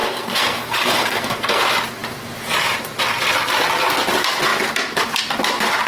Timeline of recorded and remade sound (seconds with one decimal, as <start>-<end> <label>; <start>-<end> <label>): 0.0-1.6 remade; 1.6-5.9 recorded